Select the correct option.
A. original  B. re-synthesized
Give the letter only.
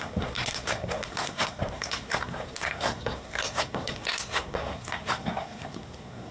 B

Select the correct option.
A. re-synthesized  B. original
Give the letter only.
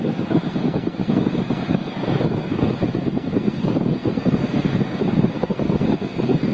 A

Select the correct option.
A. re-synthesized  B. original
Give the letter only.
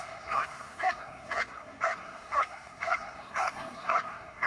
A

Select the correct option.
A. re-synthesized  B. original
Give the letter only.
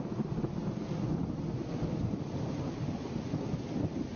B